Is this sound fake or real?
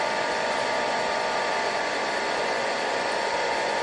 fake